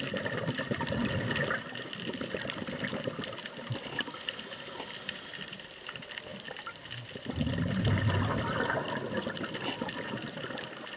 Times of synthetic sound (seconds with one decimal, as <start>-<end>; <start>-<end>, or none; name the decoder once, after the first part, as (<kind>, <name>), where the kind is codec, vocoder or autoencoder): 0.0-6.3 (vocoder, BigVGAN v2); 8.8-11.0